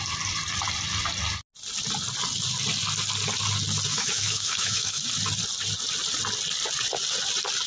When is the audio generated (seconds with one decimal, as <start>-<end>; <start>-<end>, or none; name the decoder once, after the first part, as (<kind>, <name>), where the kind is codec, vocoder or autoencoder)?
3.9-5.0 (autoencoder, DAC-VAE)